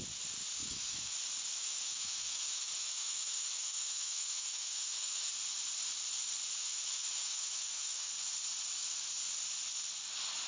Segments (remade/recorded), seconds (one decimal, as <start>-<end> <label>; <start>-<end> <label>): 0.0-0.6 recorded; 0.6-1.1 remade; 1.1-1.5 recorded; 1.5-5.3 remade; 5.3-6.6 recorded; 6.6-8.1 remade; 8.1-10.5 recorded